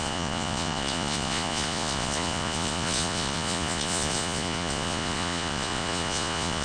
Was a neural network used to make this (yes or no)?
yes